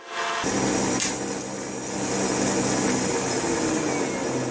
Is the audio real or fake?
real